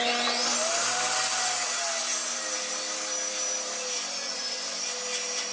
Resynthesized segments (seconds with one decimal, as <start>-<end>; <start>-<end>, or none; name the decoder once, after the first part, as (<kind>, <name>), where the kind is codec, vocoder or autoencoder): none